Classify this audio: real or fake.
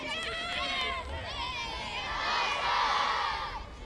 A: real